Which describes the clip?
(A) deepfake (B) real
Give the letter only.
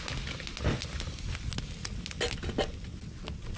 B